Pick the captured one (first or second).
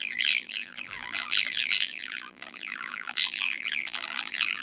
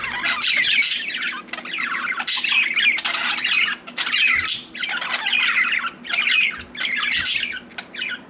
second